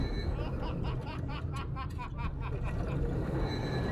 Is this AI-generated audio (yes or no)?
no